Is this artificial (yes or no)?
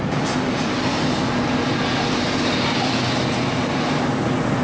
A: no